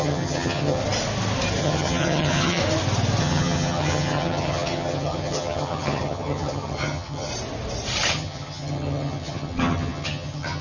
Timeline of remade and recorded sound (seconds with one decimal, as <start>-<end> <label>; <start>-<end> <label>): 0.0-0.8 remade; 0.8-1.6 recorded; 1.6-2.6 remade; 2.6-3.2 recorded; 3.2-7.3 remade; 7.3-8.1 recorded; 8.1-10.6 remade